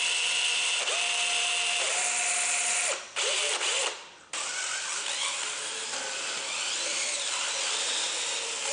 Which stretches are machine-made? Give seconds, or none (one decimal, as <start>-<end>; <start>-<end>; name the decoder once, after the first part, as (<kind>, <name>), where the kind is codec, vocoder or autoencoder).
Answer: 6.9-7.6 (vocoder, BigVGAN v2)